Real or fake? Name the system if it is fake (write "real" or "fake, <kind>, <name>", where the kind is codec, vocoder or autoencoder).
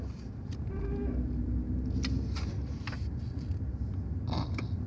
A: real